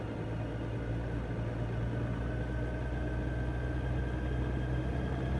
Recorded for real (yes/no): yes